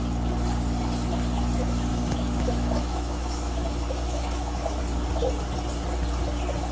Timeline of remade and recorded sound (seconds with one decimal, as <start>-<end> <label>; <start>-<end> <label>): 0.0-1.9 recorded; 1.9-4.8 remade; 4.8-6.7 recorded